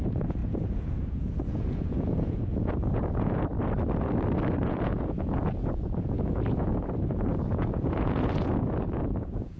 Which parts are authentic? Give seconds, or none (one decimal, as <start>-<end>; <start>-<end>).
3.5-4.5